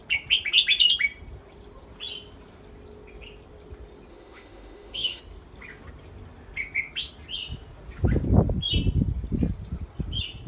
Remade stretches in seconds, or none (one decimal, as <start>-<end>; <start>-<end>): 4.1-5.2